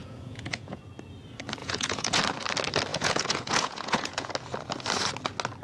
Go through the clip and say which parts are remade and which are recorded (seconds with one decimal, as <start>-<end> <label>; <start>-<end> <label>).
0.0-0.8 remade; 0.8-1.6 recorded; 1.6-2.2 remade; 2.2-2.9 recorded; 2.9-4.3 remade; 4.3-5.6 recorded